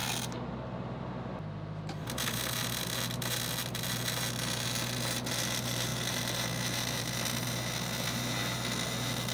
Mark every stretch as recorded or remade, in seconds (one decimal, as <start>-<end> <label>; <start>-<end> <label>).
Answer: 0.0-9.3 recorded

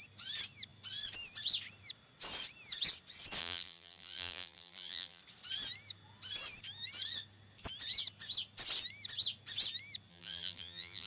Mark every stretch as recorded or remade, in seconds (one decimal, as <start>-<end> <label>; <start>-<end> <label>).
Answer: 0.0-3.4 recorded; 3.4-5.2 remade; 5.2-10.1 recorded; 10.1-11.1 remade

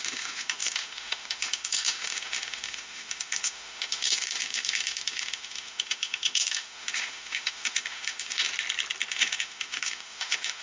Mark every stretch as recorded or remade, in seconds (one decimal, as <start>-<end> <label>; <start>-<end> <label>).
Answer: 0.0-8.5 remade; 8.5-9.1 recorded; 9.1-10.6 remade

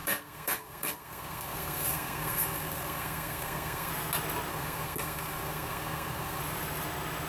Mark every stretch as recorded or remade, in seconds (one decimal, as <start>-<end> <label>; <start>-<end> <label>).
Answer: 0.0-3.9 remade; 3.9-4.5 recorded; 4.5-6.4 remade; 6.4-7.3 recorded

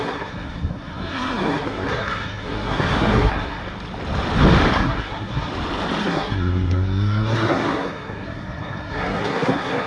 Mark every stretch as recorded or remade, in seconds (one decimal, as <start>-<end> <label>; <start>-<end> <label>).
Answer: 0.0-3.6 remade; 3.6-4.7 recorded; 4.7-5.5 remade; 5.5-6.0 recorded; 6.0-9.9 remade